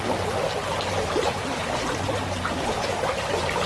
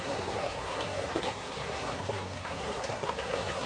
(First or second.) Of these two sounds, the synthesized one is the second